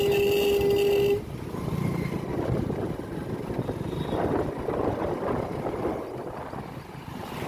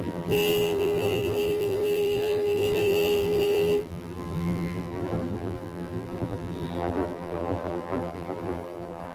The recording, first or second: first